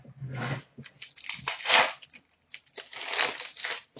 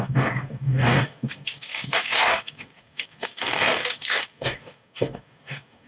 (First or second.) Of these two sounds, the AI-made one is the second